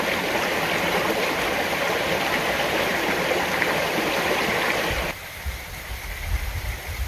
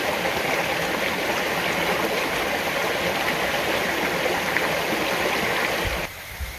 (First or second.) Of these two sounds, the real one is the second